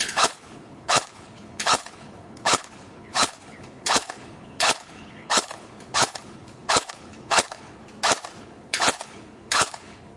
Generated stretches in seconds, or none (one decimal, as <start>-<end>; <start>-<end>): 0.0-7.8; 8.4-10.2